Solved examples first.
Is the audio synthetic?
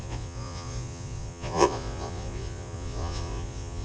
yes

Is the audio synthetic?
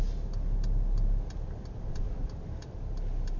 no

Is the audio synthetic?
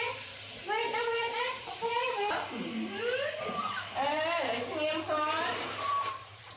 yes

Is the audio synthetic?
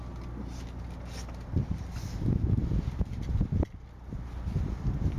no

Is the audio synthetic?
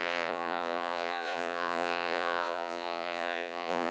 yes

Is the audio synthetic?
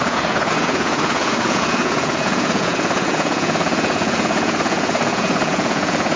yes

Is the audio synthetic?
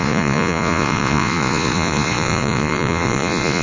yes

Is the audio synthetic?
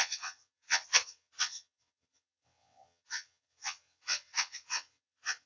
yes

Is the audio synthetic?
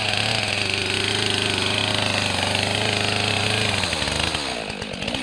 no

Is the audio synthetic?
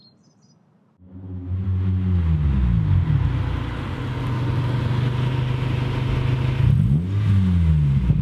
no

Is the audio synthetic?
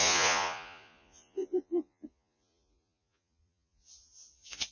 yes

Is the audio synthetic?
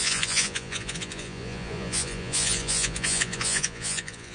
yes